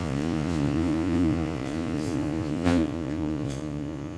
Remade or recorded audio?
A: remade